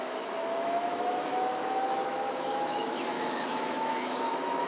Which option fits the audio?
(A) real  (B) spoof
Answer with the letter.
B